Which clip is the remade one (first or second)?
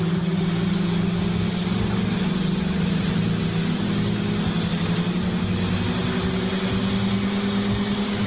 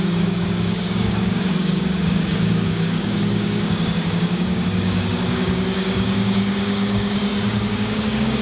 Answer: second